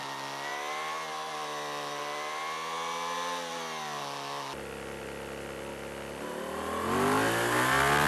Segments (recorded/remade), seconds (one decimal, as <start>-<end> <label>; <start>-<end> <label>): 0.0-8.1 recorded